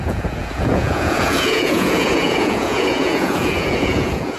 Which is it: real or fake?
fake